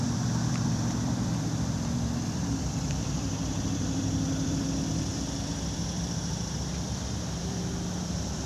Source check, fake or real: fake